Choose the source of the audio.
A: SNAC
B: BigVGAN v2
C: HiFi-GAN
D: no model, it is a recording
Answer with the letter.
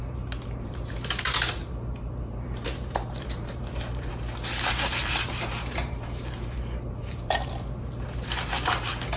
B